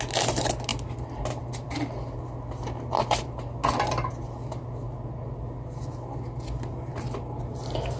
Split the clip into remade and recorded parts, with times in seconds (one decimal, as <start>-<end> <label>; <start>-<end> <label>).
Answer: 0.0-8.0 recorded